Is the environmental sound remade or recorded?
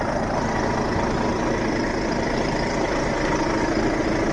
recorded